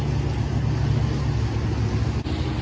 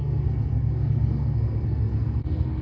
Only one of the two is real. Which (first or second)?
first